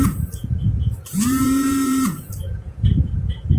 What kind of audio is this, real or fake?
fake